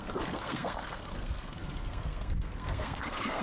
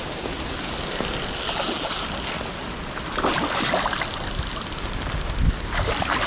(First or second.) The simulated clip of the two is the first